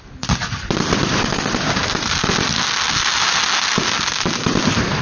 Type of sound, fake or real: real